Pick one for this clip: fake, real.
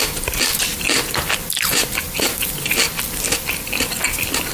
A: real